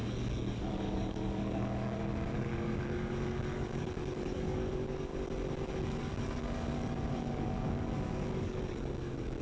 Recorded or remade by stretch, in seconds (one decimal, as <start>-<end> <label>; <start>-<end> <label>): 0.0-5.1 remade; 5.1-5.8 recorded; 5.8-9.4 remade